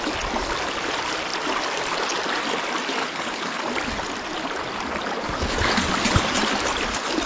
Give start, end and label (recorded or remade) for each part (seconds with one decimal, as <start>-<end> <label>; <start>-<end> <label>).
0.0-3.0 recorded; 3.0-3.6 remade; 3.6-7.3 recorded